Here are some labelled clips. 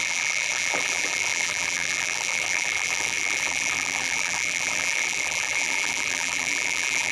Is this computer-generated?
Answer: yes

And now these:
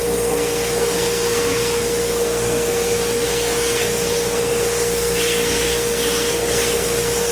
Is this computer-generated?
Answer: yes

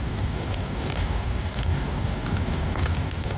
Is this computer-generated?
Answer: yes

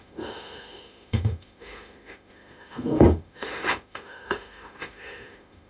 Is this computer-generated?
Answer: yes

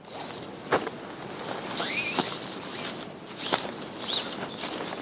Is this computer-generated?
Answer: no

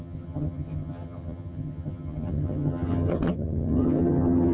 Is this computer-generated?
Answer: yes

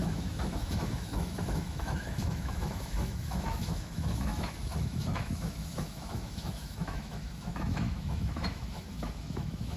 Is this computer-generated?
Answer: yes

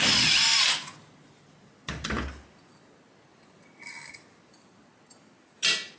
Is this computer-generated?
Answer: no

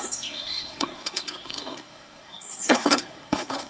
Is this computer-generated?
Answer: yes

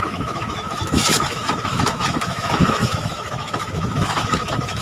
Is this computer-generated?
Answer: yes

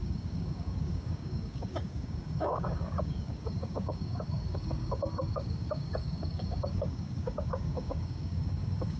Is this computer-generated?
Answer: yes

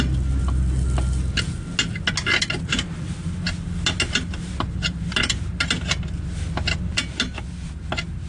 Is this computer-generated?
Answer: no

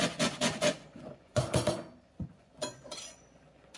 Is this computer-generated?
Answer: yes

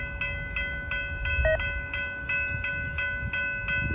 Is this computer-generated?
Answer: no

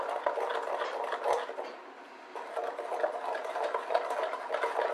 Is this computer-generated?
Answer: no